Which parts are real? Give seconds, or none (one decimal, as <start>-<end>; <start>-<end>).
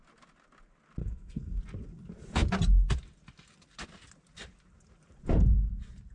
0.0-1.0; 1.6-6.1